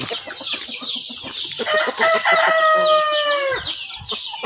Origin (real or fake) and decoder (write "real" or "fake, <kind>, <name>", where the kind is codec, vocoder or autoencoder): real